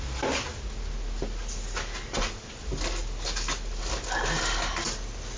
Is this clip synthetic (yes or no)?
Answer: no